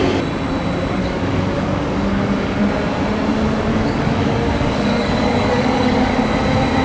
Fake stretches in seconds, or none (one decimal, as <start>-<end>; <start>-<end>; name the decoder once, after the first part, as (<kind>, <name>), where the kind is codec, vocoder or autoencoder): 1.0-2.6 (codec, DAC); 3.7-6.1